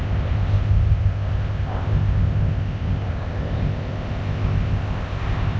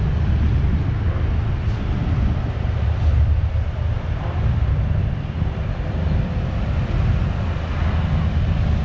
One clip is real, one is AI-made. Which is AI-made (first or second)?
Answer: first